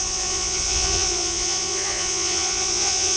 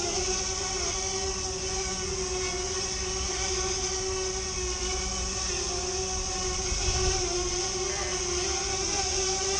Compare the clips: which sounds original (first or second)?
second